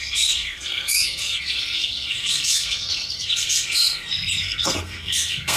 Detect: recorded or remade remade